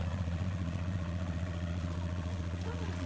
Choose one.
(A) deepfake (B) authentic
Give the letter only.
A